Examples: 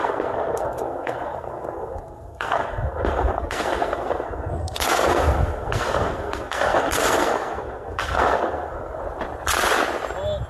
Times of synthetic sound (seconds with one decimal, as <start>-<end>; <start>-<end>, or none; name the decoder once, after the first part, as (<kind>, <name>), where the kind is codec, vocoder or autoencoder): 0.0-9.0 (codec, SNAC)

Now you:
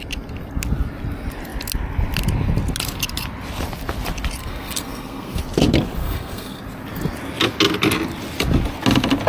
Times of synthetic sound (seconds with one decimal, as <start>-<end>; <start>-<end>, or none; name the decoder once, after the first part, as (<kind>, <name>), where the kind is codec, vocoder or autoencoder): 4.4-5.4 (codec, SNAC); 6.0-6.6

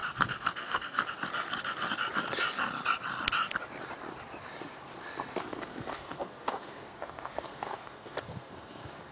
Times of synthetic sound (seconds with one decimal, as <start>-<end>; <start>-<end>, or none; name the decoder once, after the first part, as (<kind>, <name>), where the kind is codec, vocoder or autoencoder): 0.0-1.0 (codec, SNAC); 5.5-9.1

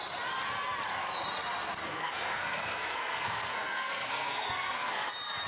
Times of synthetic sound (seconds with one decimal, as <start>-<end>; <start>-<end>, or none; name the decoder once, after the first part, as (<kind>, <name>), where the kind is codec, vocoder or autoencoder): 1.8-5.1 (codec, SNAC)

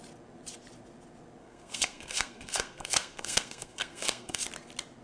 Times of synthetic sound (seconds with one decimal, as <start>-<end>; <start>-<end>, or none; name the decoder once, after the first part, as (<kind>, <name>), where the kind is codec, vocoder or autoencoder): 1.4-4.4 (codec, SNAC)

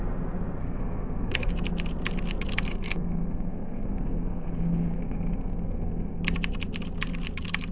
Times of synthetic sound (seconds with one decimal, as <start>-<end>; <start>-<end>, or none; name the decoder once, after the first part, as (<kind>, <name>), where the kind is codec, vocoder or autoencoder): 0.6-1.5 (codec, SNAC); 2.7-6.2